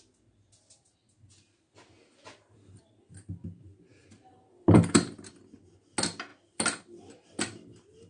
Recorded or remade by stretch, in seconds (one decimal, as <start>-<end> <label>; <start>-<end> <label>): 0.0-3.9 recorded; 3.9-5.3 remade; 5.3-6.3 recorded; 6.3-7.4 remade; 7.4-8.1 recorded